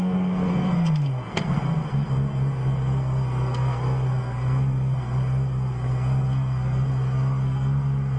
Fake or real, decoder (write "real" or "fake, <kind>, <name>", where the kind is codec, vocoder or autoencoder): fake, codec, SNAC